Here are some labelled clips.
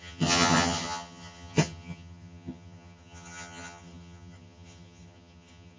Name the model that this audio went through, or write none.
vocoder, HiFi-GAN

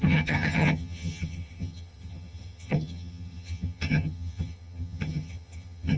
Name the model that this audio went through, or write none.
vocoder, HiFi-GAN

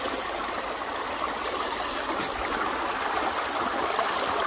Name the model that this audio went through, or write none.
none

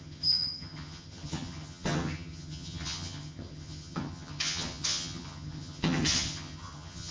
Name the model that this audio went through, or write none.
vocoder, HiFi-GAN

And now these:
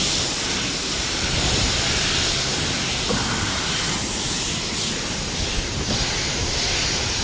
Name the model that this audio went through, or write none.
none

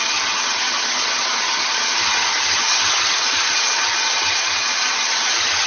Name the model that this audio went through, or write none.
vocoder, HiFi-GAN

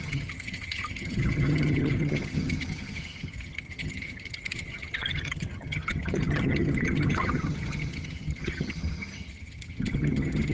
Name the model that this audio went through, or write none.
vocoder, HiFi-GAN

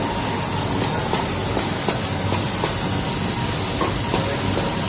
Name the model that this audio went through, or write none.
none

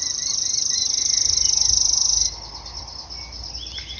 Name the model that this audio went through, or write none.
none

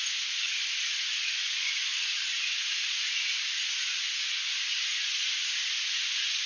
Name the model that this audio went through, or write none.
none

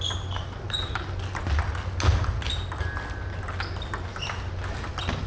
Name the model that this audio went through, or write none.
none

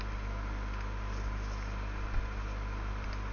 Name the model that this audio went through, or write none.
none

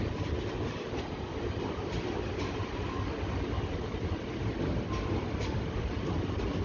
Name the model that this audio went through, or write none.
none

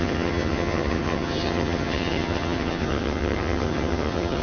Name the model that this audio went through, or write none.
vocoder, HiFi-GAN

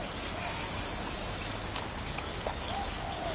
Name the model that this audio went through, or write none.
none